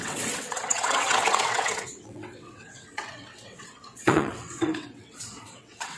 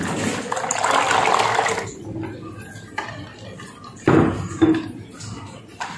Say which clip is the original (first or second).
second